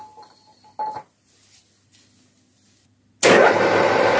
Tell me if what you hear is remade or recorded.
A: recorded